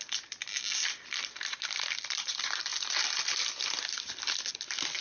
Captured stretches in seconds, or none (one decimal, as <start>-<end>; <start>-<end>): 0.0-5.0